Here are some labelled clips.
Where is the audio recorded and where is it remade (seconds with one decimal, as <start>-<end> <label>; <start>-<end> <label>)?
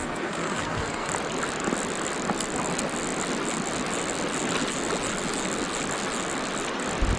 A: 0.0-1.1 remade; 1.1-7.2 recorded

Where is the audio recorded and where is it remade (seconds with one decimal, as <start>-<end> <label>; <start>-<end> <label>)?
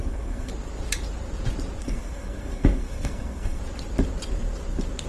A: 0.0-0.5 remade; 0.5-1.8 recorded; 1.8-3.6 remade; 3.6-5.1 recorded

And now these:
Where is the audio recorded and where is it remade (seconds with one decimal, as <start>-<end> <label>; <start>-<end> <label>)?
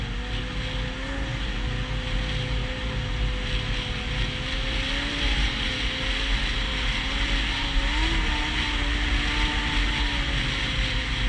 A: 0.0-11.3 recorded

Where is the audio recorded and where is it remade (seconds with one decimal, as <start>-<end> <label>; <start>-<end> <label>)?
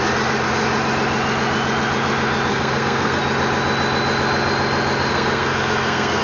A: 0.0-2.5 recorded; 2.5-3.2 remade; 3.2-5.1 recorded; 5.1-6.2 remade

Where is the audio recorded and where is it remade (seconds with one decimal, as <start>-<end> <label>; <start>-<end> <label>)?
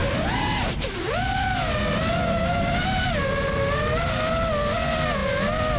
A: 0.0-5.8 recorded